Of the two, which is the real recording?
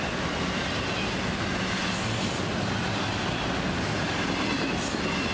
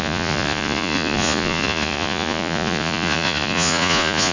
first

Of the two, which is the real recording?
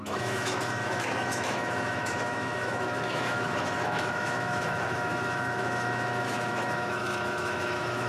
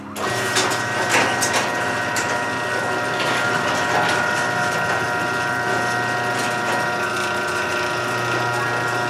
second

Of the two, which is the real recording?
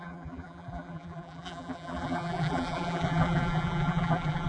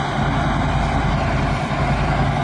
second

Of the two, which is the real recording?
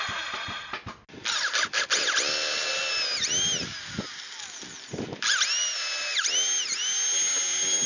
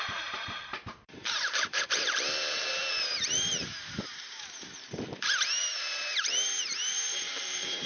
first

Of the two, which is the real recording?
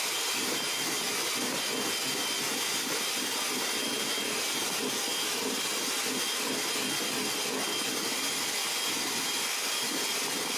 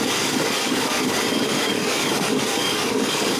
first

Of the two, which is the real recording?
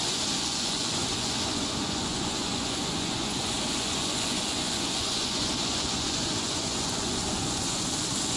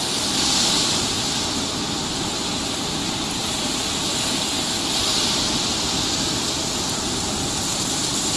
second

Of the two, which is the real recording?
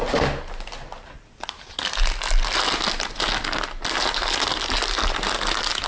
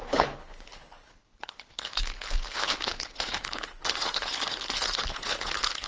first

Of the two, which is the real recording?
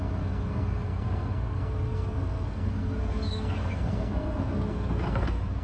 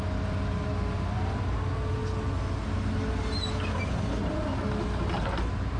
second